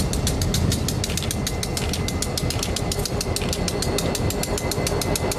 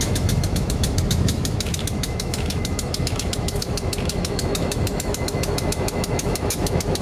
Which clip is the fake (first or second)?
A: second